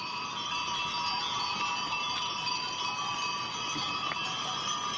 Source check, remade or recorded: recorded